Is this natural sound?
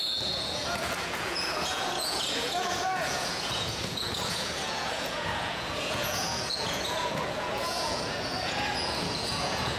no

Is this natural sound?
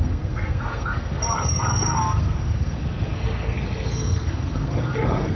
no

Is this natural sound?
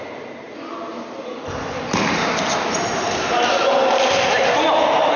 yes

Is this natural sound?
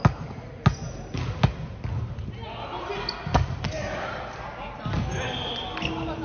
yes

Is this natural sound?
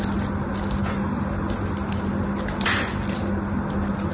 yes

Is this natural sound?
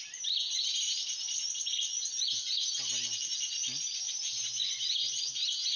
yes